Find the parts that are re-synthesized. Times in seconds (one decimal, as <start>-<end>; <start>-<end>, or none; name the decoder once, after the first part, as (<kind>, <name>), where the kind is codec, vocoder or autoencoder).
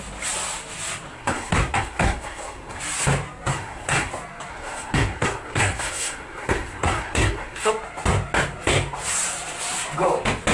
1.1-2.8 (codec, SNAC); 3.5-4.1; 4.5-7.7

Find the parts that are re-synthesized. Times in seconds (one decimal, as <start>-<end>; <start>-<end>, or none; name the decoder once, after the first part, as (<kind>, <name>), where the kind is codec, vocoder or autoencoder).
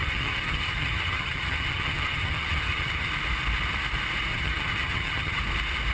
0.0-3.1 (vocoder, HiFi-GAN); 4.3-5.4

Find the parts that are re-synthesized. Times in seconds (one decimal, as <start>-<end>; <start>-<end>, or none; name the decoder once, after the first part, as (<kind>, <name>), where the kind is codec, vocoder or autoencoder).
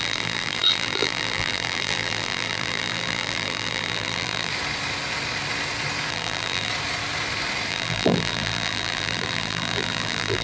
0.0-4.5 (vocoder, BigVGAN v2); 6.1-6.7; 7.7-10.4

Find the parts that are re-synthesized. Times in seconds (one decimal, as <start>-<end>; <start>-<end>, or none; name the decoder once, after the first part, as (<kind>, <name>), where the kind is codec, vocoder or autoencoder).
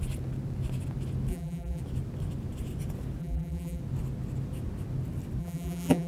1.3-1.8 (vocoder, BigVGAN v2); 3.2-3.8; 5.4-6.1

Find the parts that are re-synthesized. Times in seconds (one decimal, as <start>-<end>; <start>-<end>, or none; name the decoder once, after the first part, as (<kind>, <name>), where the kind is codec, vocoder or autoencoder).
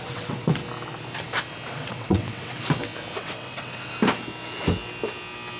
0.0-0.6 (vocoder, WaveNeXt); 1.7-2.6; 3.2-3.9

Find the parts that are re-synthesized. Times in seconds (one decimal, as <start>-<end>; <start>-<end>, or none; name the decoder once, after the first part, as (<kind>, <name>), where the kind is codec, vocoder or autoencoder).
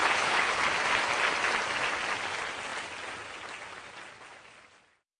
0.0-0.6 (codec, HILCodec)